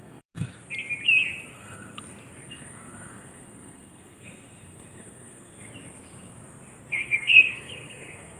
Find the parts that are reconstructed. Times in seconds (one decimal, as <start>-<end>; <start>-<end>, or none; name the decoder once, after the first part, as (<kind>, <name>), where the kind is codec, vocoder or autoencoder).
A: 0.0-0.5 (codec, SNAC); 1.5-1.9; 2.5-5.5; 6.9-8.4